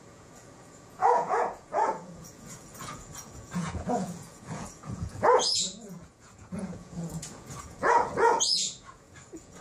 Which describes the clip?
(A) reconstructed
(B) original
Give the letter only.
A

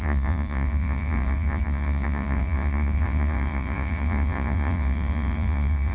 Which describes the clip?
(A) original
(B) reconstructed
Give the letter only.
B